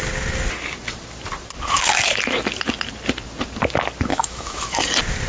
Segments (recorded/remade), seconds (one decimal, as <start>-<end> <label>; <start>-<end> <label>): 0.0-4.1 recorded; 4.1-4.8 remade; 4.8-5.3 recorded